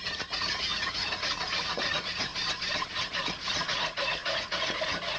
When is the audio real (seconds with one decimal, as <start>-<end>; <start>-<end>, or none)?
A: 2.3-2.9